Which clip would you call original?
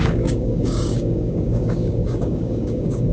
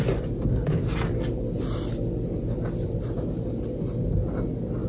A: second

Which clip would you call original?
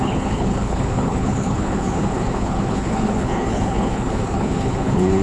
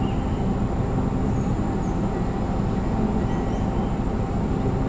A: second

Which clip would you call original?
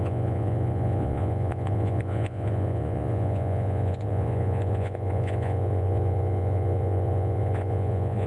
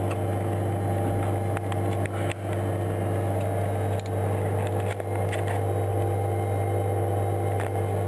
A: second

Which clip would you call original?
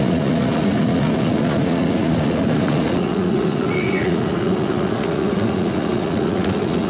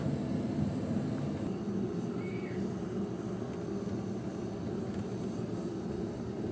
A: second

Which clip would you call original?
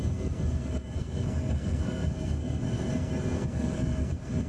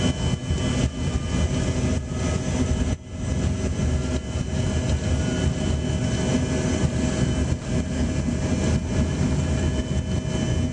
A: second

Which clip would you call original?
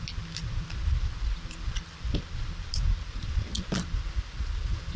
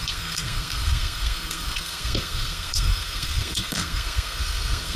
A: first